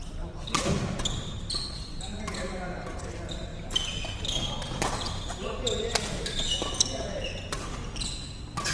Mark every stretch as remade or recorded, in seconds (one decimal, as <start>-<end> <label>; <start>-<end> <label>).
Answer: 0.0-8.7 recorded